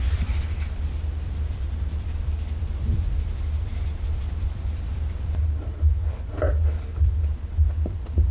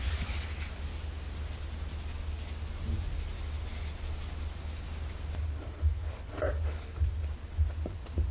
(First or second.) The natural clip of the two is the second